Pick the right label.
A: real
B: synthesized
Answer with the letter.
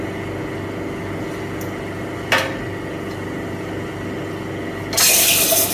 A